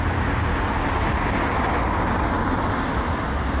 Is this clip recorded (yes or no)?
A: yes